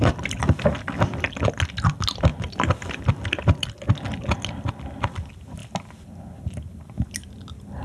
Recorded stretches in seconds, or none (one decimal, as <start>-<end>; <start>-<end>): 0.0-7.8